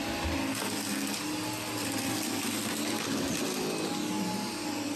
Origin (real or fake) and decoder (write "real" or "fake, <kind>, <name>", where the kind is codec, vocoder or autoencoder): real